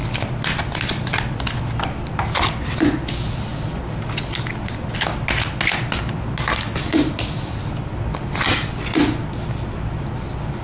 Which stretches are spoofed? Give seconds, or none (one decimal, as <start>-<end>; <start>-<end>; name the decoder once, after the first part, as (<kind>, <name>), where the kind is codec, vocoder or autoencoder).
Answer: none